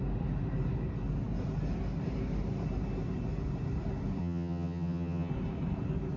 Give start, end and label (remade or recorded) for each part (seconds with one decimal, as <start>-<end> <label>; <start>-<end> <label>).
0.0-4.2 recorded; 4.2-5.3 remade; 5.3-6.2 recorded